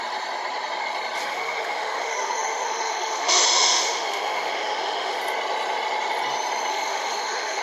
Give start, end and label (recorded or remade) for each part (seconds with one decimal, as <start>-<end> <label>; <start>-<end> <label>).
0.0-1.2 recorded; 1.2-5.2 remade; 5.2-6.7 recorded; 6.7-7.6 remade